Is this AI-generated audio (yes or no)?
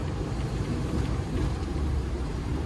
yes